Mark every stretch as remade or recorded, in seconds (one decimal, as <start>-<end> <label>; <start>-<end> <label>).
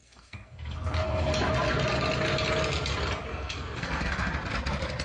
0.0-1.3 remade; 1.3-3.3 recorded; 3.3-4.3 remade; 4.3-5.0 recorded